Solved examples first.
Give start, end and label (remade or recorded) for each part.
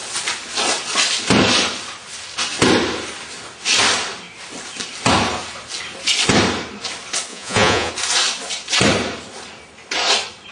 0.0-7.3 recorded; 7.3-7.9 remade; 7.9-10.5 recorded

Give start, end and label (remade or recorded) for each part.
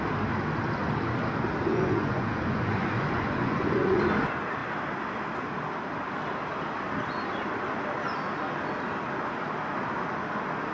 0.0-1.7 recorded; 1.7-4.0 remade; 4.0-10.7 recorded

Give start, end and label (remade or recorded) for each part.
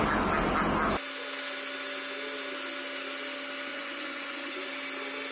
0.0-3.7 recorded; 3.7-4.7 remade; 4.7-5.3 recorded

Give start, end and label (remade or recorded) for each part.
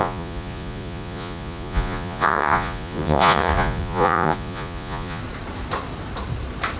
0.0-5.2 remade; 5.2-6.8 recorded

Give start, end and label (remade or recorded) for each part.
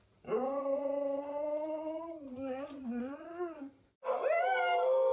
0.0-0.6 recorded; 0.6-3.7 remade; 3.7-5.1 recorded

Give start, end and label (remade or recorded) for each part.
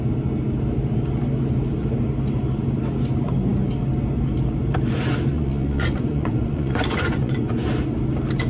0.0-5.3 recorded; 5.3-7.7 remade; 7.7-8.5 recorded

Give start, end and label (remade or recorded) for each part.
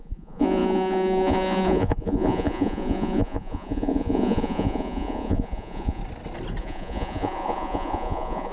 0.0-6.0 remade; 6.0-6.6 recorded; 6.6-8.5 remade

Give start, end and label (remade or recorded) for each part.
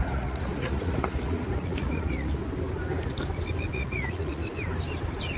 0.0-2.4 remade; 2.4-3.7 recorded; 3.7-4.4 remade; 4.4-5.4 recorded